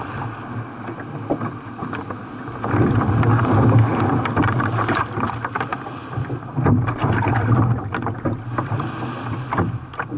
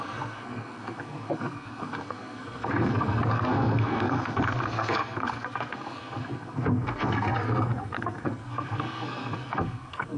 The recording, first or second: first